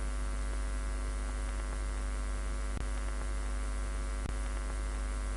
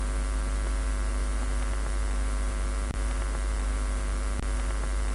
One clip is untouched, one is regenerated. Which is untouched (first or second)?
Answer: first